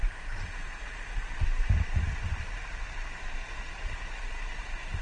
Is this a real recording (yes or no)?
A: yes